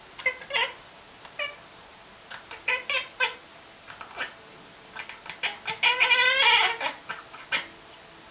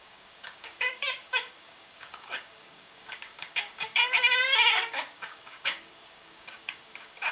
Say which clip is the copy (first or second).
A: second